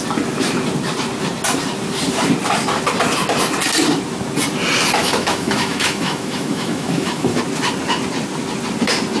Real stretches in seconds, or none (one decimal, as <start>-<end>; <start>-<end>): 0.0-5.0; 7.4-9.2